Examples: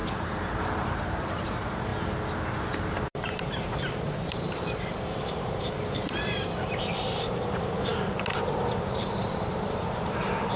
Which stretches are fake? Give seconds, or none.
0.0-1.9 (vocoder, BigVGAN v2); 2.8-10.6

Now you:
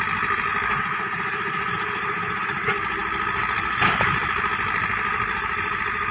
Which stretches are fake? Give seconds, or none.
3.0-6.1 (vocoder, BigVGAN v2)

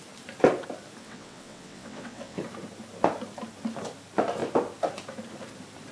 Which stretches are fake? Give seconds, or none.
1.0-2.4 (vocoder, WaveNeXt)